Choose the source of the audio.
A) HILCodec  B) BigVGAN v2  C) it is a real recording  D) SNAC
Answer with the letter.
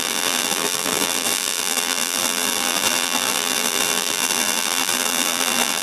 B